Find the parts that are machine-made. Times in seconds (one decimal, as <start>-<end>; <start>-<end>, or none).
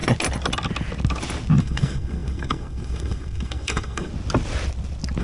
1.6-4.1